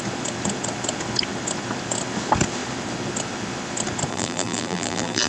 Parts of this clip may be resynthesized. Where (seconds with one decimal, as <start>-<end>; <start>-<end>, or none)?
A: 4.1-5.3

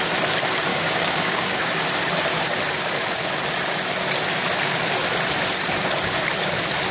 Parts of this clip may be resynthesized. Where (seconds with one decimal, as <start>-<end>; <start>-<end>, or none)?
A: 0.7-1.7

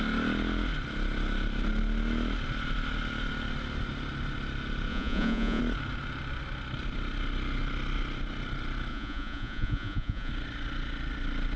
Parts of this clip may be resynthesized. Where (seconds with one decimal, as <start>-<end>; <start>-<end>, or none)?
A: 4.9-5.6; 8.9-10.3

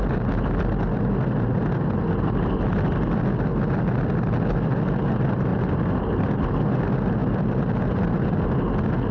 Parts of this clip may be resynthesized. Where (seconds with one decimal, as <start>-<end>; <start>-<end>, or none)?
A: 7.2-7.8

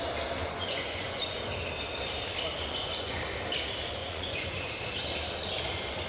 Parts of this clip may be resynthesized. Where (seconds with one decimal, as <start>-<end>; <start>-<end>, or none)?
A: 0.4-1.4; 2.6-3.2; 4.0-4.7

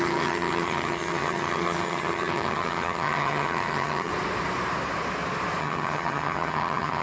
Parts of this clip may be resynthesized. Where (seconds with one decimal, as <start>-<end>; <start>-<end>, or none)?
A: 0.0-4.1; 5.6-7.0

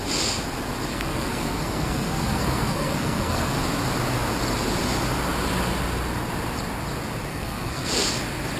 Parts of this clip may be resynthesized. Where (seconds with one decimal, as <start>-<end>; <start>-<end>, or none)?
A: 0.9-3.6; 7.3-7.9